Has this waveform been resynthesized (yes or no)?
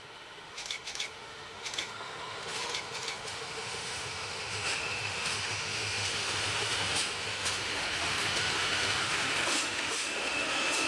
yes